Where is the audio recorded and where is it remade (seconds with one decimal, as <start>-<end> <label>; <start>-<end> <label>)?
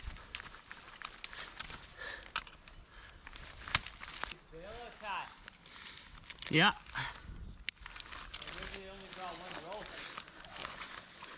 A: 0.0-10.6 recorded; 10.6-11.4 remade